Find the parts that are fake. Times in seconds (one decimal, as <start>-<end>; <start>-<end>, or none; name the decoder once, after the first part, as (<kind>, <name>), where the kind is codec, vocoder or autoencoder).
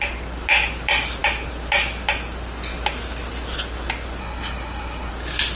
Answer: 4.2-5.1 (codec, HILCodec)